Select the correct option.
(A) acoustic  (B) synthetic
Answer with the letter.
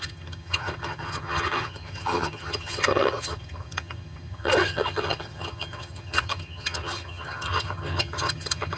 B